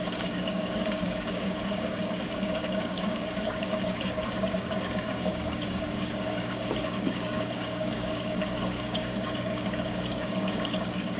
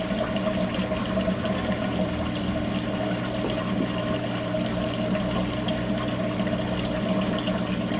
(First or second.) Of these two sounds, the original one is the second